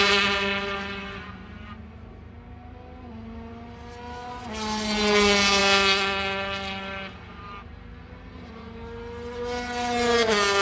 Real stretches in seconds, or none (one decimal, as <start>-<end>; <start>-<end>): 0.0-10.6